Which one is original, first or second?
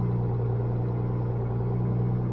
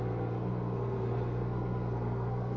first